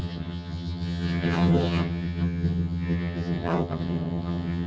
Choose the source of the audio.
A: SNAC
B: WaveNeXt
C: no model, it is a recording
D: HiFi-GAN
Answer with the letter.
D